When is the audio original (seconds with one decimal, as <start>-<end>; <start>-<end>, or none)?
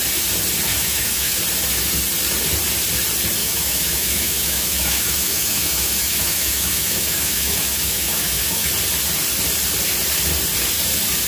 0.0-0.7; 1.4-3.4; 8.7-11.3